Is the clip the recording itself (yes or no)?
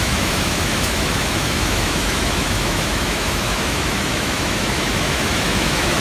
no